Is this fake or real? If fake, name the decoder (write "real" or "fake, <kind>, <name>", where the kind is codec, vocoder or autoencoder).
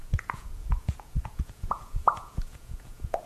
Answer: fake, vocoder, Vocos